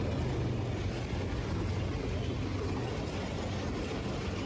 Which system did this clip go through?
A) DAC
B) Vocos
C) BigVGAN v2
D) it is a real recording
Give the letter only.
D